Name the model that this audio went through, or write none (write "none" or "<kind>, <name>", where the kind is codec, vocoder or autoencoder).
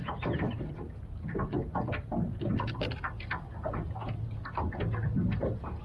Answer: none